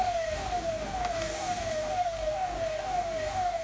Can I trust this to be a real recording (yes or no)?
no